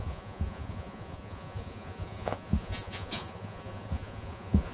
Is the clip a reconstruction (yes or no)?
yes